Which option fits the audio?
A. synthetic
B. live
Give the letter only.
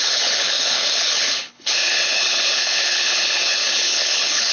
A